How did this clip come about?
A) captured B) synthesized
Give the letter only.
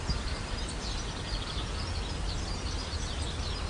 A